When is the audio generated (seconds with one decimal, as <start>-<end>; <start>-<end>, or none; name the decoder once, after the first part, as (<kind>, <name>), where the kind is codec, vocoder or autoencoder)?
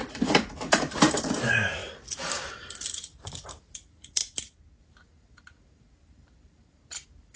0.0-4.2 (vocoder, BigVGAN v2); 4.8-7.4